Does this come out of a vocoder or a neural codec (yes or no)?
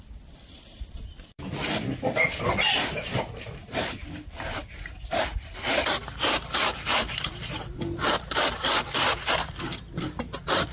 yes